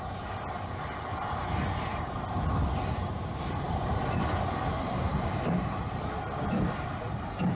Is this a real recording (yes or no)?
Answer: no